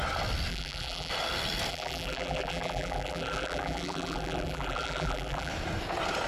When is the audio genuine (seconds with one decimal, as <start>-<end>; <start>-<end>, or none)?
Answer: 0.0-0.5; 1.1-1.7; 5.5-6.3